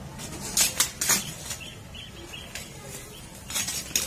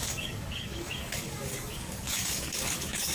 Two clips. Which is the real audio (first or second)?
first